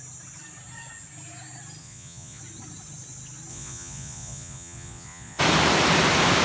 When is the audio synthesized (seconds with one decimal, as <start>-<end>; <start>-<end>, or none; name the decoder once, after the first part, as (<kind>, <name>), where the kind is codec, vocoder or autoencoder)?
1.8-2.4 (vocoder, Vocos); 3.5-5.4